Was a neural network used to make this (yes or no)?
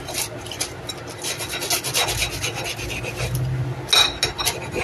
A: no